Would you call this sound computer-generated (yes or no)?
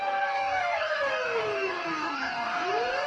yes